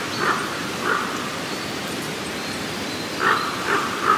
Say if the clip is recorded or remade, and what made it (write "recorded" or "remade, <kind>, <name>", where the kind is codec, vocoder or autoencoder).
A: remade, vocoder, BigVGAN v2